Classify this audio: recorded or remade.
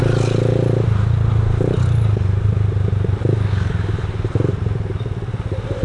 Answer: recorded